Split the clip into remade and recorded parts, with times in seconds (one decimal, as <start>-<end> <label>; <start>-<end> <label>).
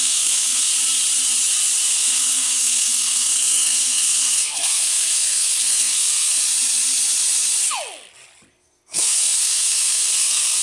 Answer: 0.0-0.7 remade; 0.7-1.9 recorded; 1.9-6.4 remade; 6.4-8.5 recorded; 8.5-10.6 remade